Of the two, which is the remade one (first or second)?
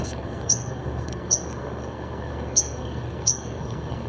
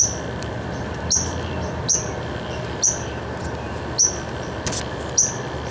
first